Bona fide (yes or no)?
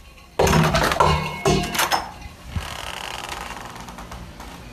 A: yes